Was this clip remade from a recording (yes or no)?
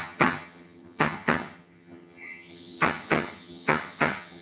yes